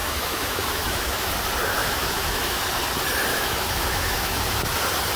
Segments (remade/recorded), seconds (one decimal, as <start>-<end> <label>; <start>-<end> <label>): 0.0-1.3 remade; 1.3-1.8 recorded; 1.8-2.6 remade; 2.6-3.3 recorded; 3.3-4.6 remade; 4.6-5.2 recorded